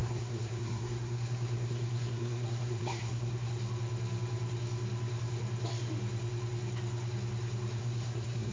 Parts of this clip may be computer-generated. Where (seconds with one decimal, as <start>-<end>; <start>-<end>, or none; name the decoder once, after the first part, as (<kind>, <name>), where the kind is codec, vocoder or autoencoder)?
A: 0.0-3.5 (codec, SNAC); 7.8-8.5